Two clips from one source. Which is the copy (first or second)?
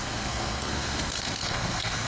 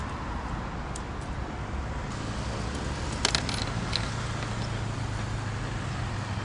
first